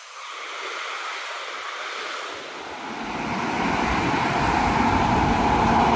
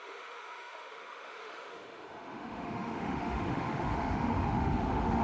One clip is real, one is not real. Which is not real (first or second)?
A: second